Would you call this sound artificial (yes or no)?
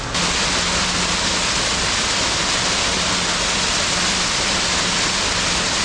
no